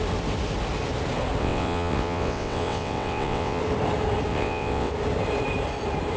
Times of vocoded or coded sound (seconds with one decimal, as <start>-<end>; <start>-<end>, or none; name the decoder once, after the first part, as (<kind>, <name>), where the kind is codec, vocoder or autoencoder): 1.4-3.6 (vocoder, WaveNeXt); 4.3-4.9